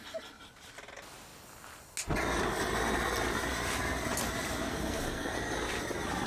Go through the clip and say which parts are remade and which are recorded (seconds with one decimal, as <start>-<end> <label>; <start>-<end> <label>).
0.0-4.7 recorded; 4.7-5.4 remade; 5.4-6.3 recorded